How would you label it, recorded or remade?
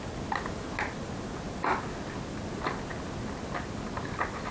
recorded